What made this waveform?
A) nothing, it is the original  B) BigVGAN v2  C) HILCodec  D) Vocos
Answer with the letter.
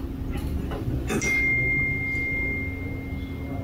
A